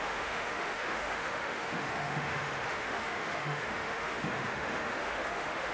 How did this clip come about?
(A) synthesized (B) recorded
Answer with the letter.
A